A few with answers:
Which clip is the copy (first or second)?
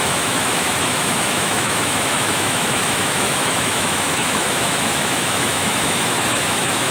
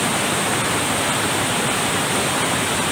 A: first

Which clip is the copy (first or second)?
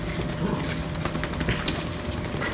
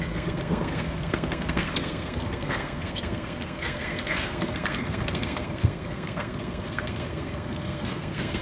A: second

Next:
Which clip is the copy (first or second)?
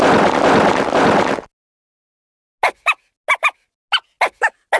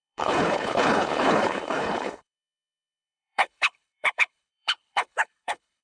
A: second